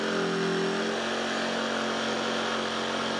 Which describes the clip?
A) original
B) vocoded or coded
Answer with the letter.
A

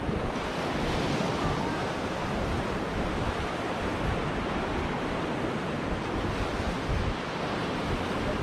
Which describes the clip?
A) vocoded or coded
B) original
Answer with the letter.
B